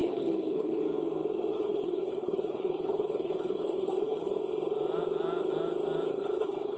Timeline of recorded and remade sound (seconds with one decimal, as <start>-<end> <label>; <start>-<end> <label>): 0.0-0.8 remade; 0.8-1.5 recorded; 1.5-4.4 remade; 4.4-6.1 recorded; 6.1-6.8 remade